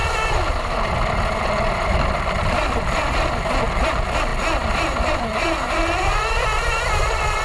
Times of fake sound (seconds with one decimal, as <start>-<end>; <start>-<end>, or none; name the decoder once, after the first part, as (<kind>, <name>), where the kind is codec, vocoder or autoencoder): 0.0-3.0 (vocoder, BigVGAN v2)